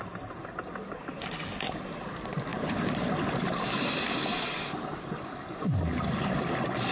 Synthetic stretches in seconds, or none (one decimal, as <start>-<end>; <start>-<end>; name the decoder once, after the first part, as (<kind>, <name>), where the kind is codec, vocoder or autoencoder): none